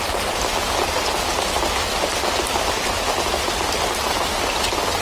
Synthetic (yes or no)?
no